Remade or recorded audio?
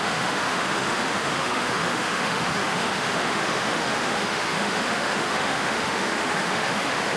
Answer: remade